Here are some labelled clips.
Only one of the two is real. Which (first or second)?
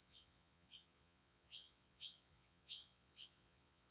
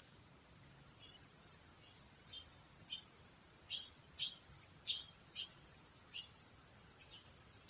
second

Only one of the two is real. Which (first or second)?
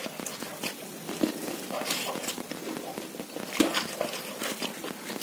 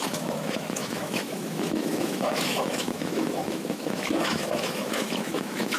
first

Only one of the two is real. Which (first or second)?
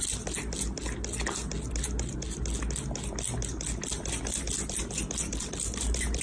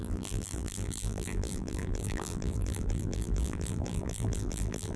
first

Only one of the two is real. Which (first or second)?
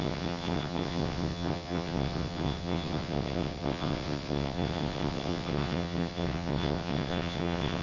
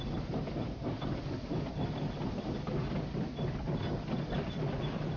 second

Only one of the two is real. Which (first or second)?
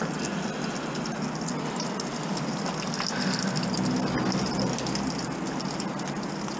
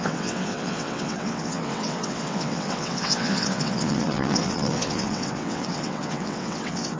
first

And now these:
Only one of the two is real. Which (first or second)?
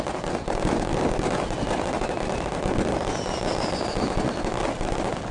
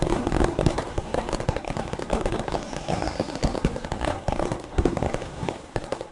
first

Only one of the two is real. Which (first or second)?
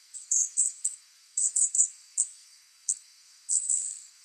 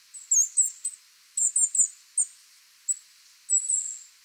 second